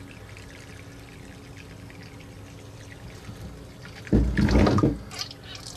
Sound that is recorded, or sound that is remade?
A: recorded